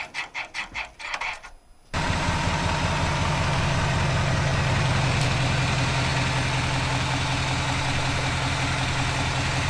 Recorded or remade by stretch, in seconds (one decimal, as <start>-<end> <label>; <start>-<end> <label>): 0.0-9.7 recorded

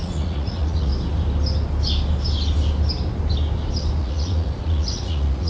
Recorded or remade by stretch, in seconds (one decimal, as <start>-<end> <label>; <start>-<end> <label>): 0.0-0.9 remade; 0.9-4.0 recorded; 4.0-5.5 remade

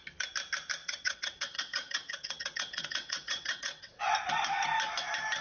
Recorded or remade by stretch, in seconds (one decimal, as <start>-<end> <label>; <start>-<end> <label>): 0.0-0.8 recorded; 0.8-4.0 remade; 4.0-5.4 recorded